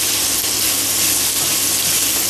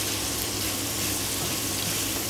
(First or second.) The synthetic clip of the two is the second